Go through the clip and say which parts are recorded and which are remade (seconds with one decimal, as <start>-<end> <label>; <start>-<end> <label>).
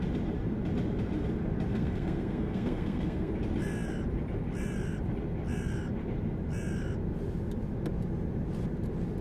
0.0-1.7 recorded; 1.7-3.3 remade; 3.3-9.2 recorded